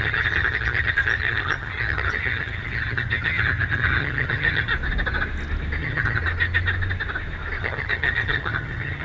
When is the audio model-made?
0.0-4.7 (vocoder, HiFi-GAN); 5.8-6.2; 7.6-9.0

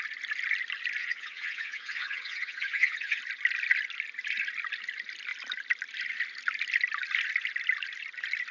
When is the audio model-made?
1.0-3.2 (vocoder, Vocos)

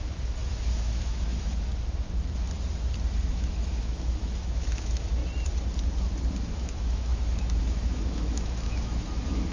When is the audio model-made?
0.0-1.7 (autoencoder, DAC-VAE); 3.2-5.2; 6.4-9.5

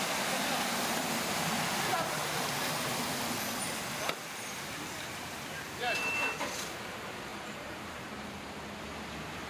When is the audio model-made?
4.5-5.2 (vocoder, BigVGAN v2); 7.3-8.3

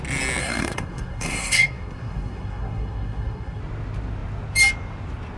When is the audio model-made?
0.4-3.6 (codec, SNAC)

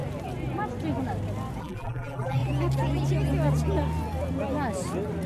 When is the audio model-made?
1.6-2.4 (vocoder, BigVGAN v2)

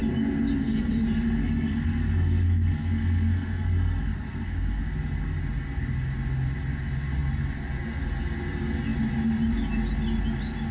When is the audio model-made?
0.6-4.8 (codec, SNAC)